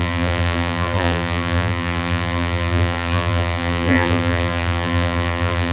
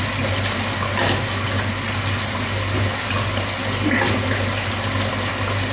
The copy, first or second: first